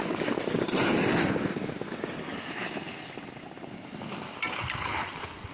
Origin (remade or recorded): recorded